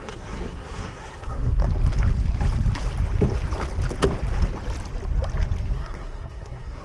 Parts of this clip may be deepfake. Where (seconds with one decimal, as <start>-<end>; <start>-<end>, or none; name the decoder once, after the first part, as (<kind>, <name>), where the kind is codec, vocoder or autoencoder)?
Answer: 0.0-1.6 (codec, SNAC); 5.7-6.8